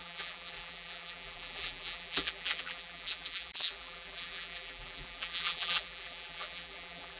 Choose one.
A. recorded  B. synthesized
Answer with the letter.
B